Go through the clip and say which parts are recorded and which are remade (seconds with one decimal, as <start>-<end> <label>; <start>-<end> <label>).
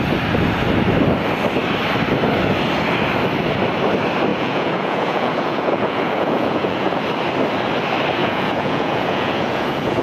0.0-4.3 recorded; 4.3-7.0 remade; 7.0-8.2 recorded; 8.2-10.0 remade